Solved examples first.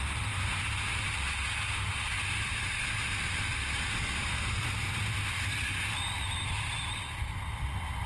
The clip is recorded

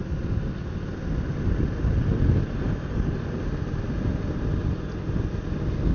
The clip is recorded